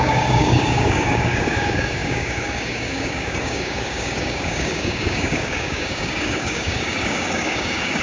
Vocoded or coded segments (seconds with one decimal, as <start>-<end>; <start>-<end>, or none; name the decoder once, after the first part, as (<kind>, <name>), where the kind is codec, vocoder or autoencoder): 0.0-8.0 (codec, DAC)